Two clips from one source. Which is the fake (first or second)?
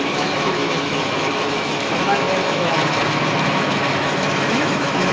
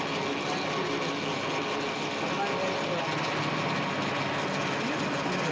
first